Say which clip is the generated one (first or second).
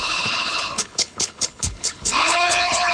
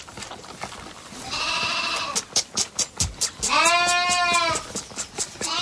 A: first